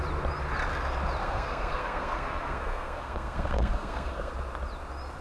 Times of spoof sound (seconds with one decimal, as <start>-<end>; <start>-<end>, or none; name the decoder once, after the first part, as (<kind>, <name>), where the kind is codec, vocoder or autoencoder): 1.2-4.3 (codec, SNAC)